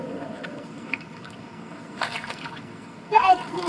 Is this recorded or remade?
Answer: remade